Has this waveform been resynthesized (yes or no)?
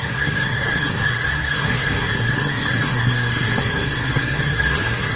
yes